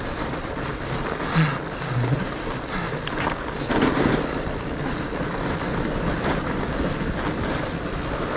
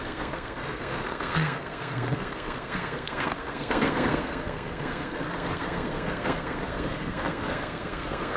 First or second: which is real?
first